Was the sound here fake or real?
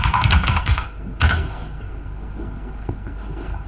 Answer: fake